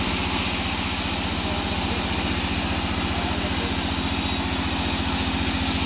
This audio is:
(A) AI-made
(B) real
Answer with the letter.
B